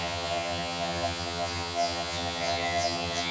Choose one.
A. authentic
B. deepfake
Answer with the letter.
B